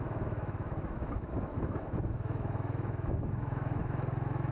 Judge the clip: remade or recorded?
remade